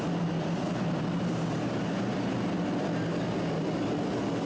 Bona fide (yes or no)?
yes